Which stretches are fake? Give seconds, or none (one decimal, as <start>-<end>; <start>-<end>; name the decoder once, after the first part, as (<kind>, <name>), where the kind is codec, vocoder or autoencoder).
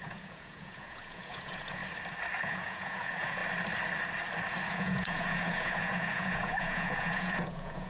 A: 0.0-1.8 (vocoder, Vocos); 2.4-3.4; 4.7-7.9